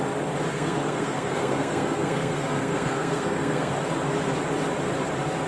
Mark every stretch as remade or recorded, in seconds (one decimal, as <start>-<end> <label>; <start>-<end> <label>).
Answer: 0.0-0.5 recorded; 0.5-3.7 remade; 3.7-5.5 recorded